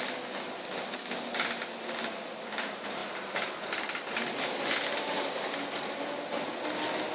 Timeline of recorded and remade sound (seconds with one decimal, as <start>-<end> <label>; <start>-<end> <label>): 0.0-7.1 recorded